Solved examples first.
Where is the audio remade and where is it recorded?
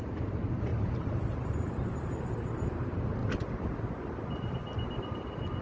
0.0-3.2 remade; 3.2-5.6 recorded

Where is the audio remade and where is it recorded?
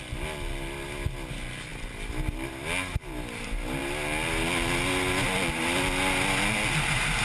0.0-7.2 recorded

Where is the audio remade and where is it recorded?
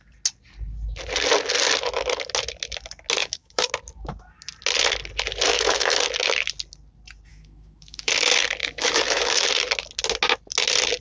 0.0-3.2 recorded; 3.2-3.7 remade; 3.7-5.5 recorded; 5.5-6.0 remade; 6.0-7.3 recorded; 7.3-8.1 remade; 8.1-8.6 recorded; 8.6-9.4 remade; 9.4-11.0 recorded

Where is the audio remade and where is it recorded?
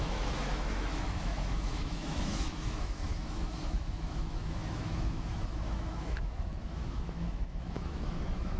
0.0-8.6 remade